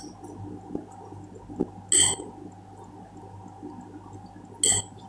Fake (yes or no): no